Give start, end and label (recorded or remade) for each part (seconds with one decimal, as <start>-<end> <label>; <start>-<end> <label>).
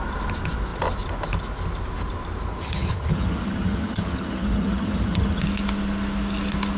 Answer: 0.0-2.5 recorded; 2.5-5.4 remade; 5.4-6.8 recorded